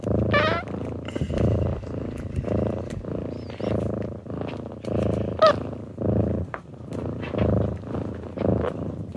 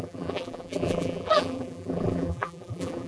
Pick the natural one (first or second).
first